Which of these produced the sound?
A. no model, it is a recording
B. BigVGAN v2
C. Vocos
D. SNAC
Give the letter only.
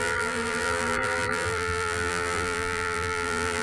B